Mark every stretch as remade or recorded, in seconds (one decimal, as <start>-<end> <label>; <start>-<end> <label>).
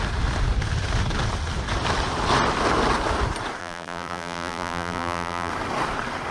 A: 0.0-3.6 recorded; 3.6-5.5 remade; 5.5-6.3 recorded